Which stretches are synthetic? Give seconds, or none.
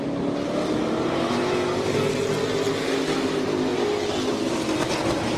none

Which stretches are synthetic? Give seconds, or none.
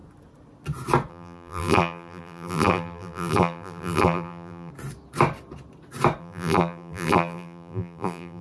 1.1-4.7 (vocoder, BigVGAN v2); 6.2-8.4